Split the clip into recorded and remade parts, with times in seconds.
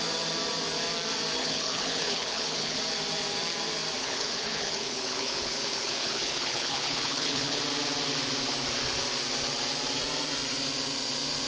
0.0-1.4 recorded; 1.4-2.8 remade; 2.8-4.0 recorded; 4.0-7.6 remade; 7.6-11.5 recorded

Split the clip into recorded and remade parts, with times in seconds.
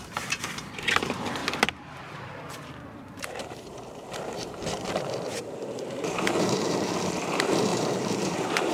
0.0-8.7 remade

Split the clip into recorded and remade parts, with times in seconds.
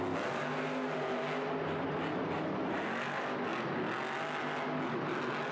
0.0-5.5 recorded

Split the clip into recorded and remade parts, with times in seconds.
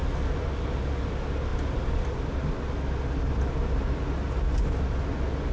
0.0-5.5 recorded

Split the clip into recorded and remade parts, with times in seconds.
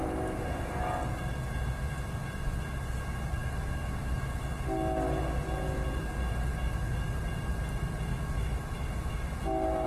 0.0-3.4 recorded; 3.4-4.2 remade; 4.2-6.5 recorded; 6.5-7.1 remade; 7.1-8.1 recorded; 8.1-9.4 remade; 9.4-9.9 recorded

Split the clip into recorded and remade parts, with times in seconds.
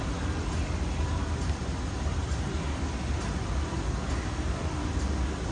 0.0-5.5 recorded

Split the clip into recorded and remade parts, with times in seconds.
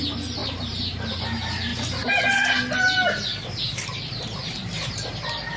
0.0-0.4 recorded; 0.4-1.1 remade; 1.1-3.3 recorded; 3.3-5.1 remade; 5.1-5.6 recorded